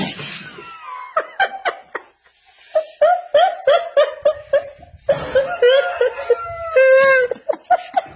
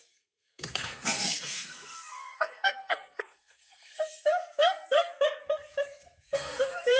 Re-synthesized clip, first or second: second